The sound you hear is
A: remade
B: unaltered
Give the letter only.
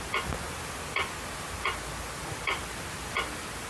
B